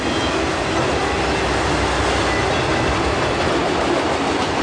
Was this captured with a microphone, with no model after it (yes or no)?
yes